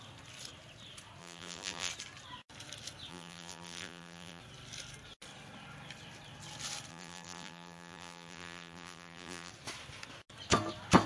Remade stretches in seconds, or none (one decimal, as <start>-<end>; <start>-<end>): 1.2-1.9; 3.1-4.4; 6.9-9.5